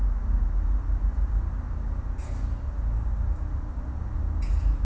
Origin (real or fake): real